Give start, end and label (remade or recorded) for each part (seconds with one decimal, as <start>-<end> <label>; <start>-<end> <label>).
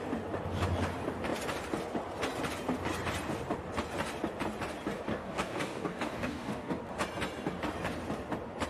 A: 0.0-5.1 recorded; 5.1-6.8 remade; 6.8-8.7 recorded